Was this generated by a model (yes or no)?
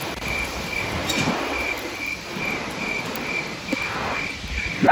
no